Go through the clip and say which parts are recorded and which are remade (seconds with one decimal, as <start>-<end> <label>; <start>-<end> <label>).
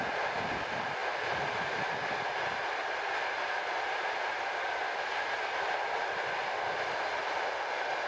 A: 0.0-8.1 recorded